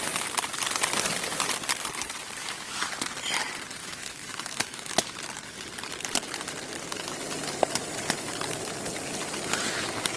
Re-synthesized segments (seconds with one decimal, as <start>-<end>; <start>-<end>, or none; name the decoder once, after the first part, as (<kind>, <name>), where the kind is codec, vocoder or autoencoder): 2.4-2.9 (autoencoder, DAC-VAE); 3.8-5.2